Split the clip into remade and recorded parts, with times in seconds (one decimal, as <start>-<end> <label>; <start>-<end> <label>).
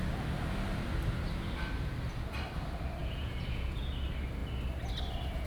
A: 0.0-3.0 recorded; 3.0-3.9 remade; 3.9-5.5 recorded